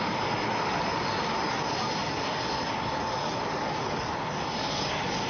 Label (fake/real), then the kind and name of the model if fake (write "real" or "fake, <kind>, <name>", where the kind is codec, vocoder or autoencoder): real